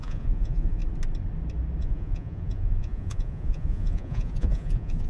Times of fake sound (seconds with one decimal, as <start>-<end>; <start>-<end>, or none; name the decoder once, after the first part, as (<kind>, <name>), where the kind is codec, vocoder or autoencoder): 0.0-0.8 (vocoder, Vocos); 1.8-5.1

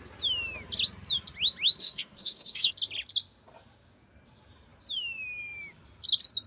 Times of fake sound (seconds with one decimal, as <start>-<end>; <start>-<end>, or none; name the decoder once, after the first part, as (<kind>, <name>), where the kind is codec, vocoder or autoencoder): 1.8-2.7 (codec, DAC)